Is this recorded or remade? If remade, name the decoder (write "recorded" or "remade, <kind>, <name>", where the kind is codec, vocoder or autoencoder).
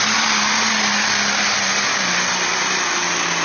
recorded